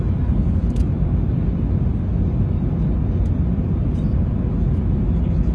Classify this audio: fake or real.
real